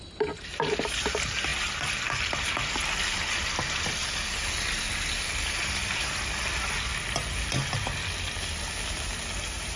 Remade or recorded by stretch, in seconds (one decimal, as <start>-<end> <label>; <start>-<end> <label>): 0.0-1.5 recorded; 1.5-3.3 remade; 3.3-4.0 recorded; 4.0-5.3 remade; 5.3-9.8 recorded

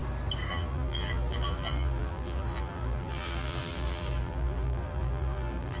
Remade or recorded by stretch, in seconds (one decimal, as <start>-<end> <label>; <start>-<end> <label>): 0.0-0.5 recorded; 0.5-5.8 remade